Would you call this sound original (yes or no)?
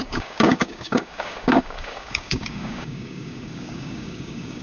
no